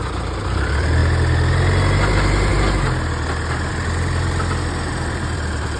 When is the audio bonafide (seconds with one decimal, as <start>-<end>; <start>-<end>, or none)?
1.0-2.1; 2.5-3.7